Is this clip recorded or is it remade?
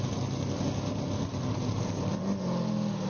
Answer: recorded